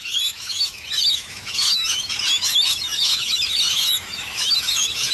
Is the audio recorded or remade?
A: remade